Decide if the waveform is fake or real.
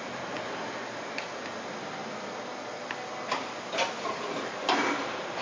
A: real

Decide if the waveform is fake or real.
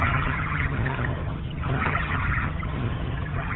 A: fake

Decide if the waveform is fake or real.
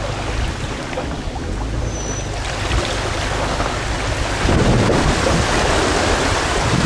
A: real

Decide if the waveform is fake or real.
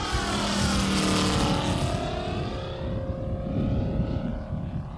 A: real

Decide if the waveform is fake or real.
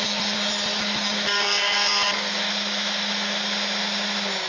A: real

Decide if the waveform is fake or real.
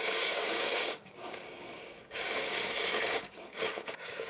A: fake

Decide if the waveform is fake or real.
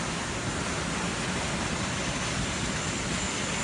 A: real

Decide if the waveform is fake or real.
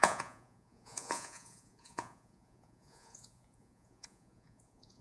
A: fake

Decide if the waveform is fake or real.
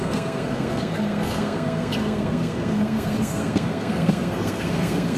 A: fake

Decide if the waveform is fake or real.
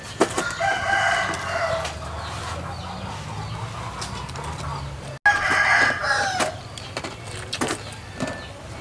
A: real